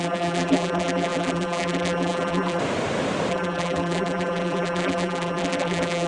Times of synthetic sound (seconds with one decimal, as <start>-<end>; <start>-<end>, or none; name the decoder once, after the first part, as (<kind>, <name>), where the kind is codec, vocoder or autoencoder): 0.0-2.6 (vocoder, BigVGAN v2); 3.3-6.1